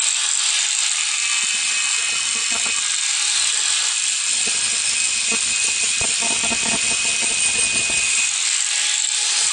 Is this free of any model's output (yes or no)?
yes